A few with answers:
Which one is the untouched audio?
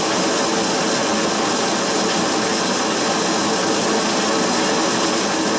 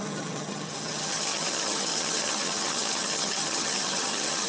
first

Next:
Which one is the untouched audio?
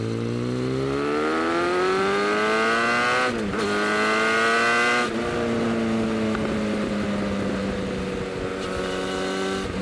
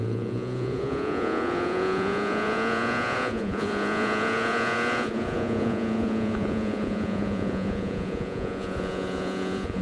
first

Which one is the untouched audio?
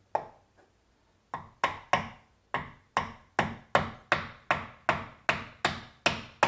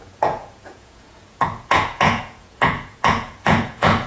first